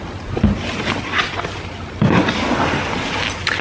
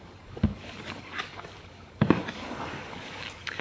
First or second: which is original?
first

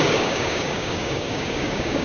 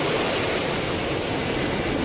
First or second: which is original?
second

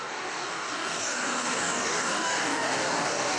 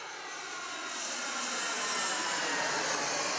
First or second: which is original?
second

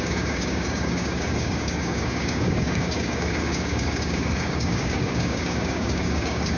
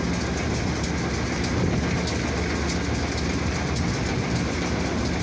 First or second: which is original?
second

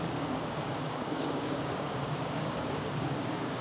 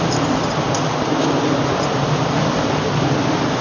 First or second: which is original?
second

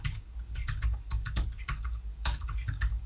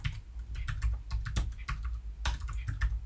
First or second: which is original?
second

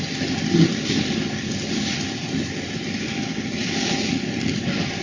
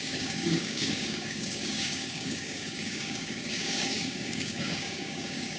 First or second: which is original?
first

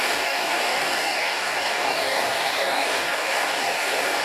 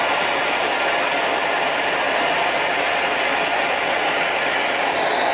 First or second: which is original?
second